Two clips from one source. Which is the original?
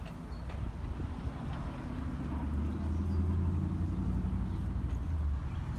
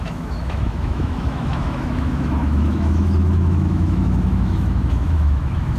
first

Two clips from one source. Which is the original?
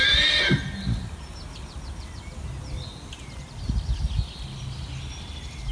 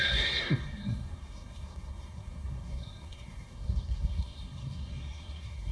first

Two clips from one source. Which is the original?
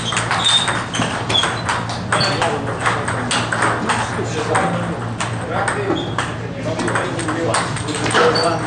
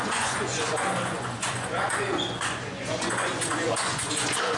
first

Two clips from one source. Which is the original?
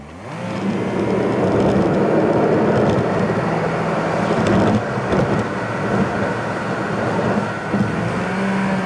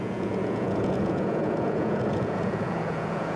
first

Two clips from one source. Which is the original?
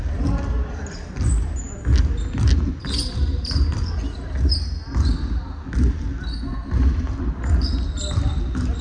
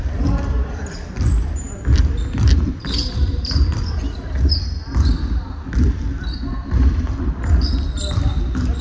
first